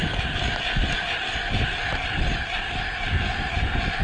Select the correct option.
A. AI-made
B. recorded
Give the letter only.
B